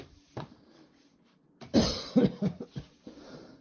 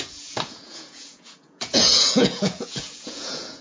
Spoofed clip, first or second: second